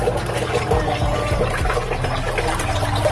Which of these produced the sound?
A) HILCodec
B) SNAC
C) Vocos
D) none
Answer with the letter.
D